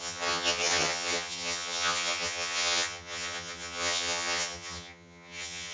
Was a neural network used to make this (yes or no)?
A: yes